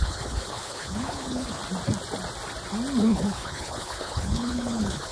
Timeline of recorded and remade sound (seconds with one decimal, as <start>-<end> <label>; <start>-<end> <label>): 0.0-1.6 remade; 1.6-3.0 recorded; 3.0-5.1 remade